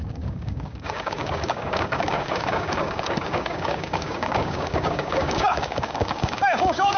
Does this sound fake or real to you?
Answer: fake